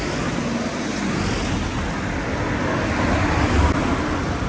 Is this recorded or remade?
recorded